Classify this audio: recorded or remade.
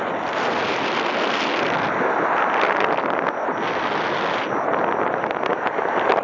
recorded